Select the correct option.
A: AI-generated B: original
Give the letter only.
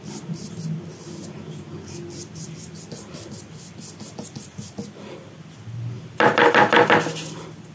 B